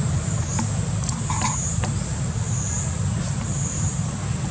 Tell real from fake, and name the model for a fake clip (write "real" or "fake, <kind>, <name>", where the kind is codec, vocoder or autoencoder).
fake, vocoder, BigVGAN v2